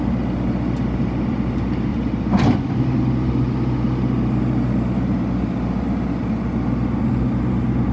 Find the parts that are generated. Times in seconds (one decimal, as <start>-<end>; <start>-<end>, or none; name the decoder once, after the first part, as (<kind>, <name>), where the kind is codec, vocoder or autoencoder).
1.9-3.0 (vocoder, BigVGAN v2)

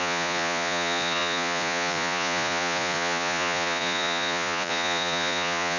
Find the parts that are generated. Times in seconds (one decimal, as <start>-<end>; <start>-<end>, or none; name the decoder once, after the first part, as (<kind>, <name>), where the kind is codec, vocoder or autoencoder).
0.0-5.8 (vocoder, Vocos)

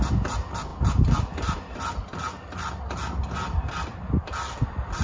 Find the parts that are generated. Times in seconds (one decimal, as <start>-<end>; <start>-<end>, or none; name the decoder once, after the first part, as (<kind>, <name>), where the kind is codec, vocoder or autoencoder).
none

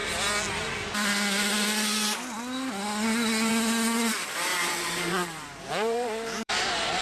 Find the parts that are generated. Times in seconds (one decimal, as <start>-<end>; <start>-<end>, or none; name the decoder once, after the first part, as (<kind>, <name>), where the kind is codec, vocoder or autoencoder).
4.5-7.0 (vocoder, BigVGAN v2)

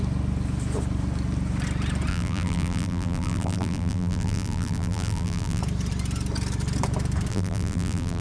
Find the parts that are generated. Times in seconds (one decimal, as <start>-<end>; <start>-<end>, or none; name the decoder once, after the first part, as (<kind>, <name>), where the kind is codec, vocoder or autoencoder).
2.1-5.6 (vocoder, BigVGAN v2); 7.3-8.2